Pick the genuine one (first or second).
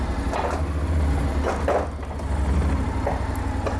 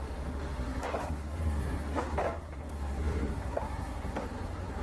first